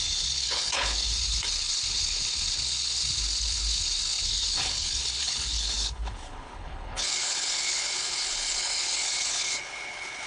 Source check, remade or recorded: remade